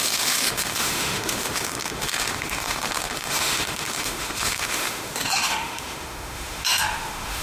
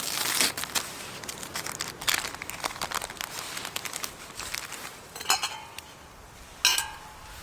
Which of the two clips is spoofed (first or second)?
first